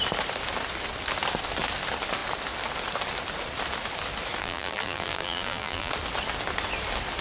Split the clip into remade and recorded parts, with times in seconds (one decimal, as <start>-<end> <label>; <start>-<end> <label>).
0.0-4.4 recorded; 4.4-5.9 remade; 5.9-7.2 recorded